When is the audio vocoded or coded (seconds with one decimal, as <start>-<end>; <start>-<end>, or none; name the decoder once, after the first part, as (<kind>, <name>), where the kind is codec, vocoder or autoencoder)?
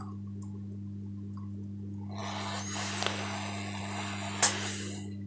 none